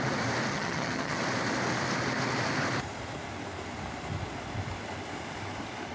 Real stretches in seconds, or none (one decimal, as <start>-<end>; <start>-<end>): 0.0-0.5; 1.2-5.9